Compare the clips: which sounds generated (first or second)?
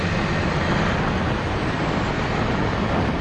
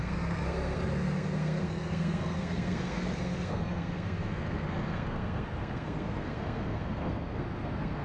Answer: second